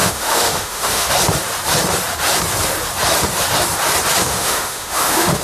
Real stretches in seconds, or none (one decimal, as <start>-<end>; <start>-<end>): 1.1-4.2